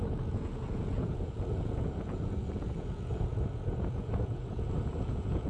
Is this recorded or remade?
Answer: remade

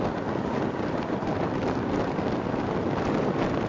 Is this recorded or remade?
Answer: recorded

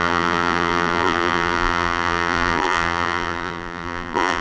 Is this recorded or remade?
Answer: remade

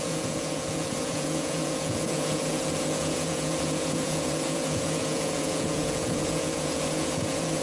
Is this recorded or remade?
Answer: remade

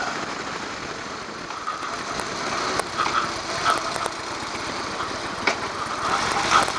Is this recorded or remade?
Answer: recorded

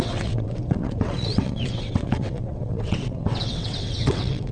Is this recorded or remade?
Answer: remade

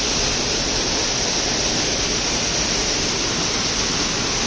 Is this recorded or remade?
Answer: recorded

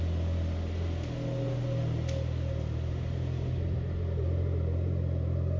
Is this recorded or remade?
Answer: recorded